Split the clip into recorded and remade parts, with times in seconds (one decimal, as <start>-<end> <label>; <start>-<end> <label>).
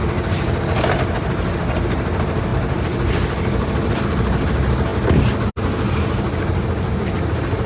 0.0-2.5 recorded; 2.5-4.0 remade; 4.0-7.7 recorded